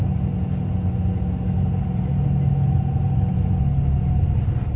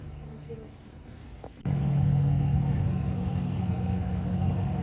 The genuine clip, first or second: first